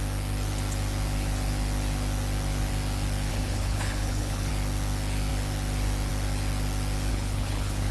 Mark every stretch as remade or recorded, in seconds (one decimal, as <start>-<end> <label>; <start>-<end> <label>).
0.0-3.3 recorded; 3.3-4.5 remade; 4.5-7.1 recorded; 7.1-7.9 remade